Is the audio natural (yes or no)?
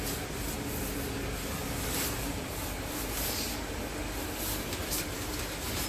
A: yes